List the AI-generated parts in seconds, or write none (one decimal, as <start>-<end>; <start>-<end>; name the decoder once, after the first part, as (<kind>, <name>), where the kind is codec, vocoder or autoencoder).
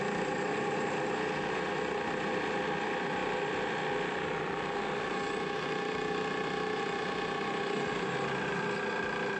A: none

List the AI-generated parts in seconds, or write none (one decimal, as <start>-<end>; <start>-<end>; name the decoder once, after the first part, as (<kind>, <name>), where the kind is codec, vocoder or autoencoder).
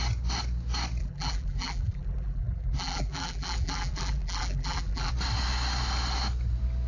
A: 1.0-5.1 (vocoder, BigVGAN v2)